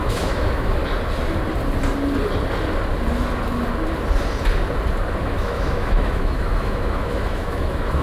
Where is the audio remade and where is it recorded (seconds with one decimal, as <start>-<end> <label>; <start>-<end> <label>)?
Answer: 0.0-0.8 remade; 0.8-5.2 recorded; 5.2-8.0 remade